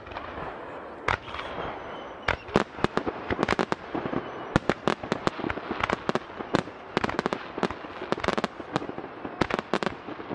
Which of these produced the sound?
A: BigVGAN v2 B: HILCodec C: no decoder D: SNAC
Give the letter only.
C